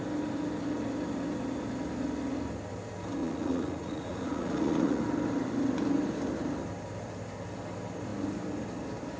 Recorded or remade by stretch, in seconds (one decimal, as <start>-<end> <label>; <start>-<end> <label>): 0.0-3.2 recorded; 3.2-5.0 remade; 5.0-9.2 recorded